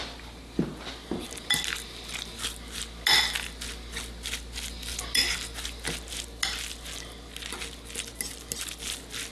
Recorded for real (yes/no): yes